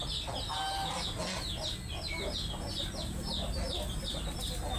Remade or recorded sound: recorded